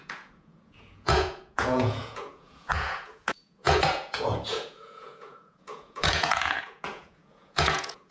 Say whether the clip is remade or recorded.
remade